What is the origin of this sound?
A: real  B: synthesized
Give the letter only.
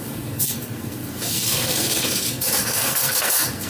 B